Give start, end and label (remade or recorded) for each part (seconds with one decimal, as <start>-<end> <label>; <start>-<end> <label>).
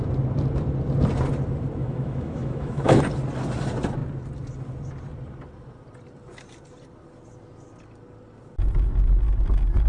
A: 0.0-1.8 recorded; 1.8-3.0 remade; 3.0-9.9 recorded